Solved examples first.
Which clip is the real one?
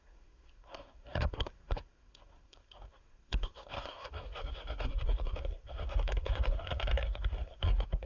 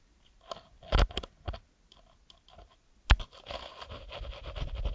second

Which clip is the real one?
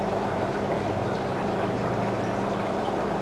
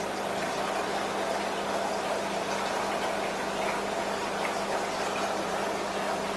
second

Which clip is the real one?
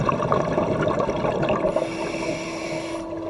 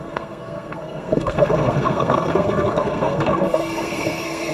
first